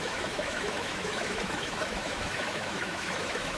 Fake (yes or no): yes